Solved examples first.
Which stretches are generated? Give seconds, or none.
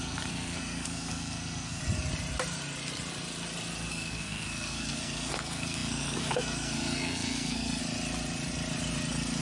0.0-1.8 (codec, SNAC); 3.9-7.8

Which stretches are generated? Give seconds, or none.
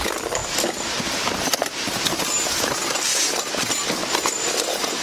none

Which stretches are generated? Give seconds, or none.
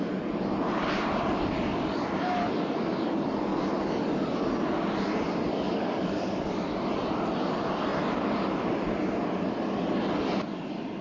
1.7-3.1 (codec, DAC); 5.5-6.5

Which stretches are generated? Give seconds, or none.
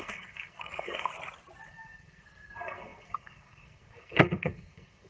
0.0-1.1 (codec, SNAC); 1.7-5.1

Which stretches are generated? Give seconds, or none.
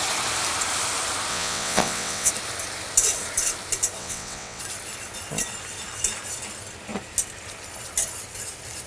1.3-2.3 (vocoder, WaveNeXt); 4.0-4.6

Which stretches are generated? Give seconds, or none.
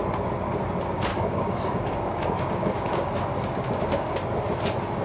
1.1-4.1 (codec, DAC)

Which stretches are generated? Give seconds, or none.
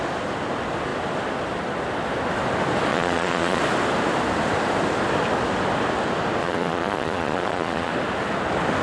2.9-3.6 (vocoder, Vocos); 6.4-7.9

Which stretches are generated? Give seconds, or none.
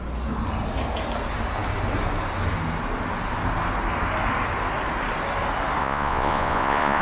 5.8-7.0 (vocoder, Vocos)